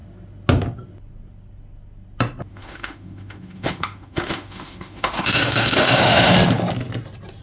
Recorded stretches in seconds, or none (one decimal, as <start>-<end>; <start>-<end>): 0.0-2.5; 6.3-7.4